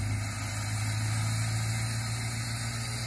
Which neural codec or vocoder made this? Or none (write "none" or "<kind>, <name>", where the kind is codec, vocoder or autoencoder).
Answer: none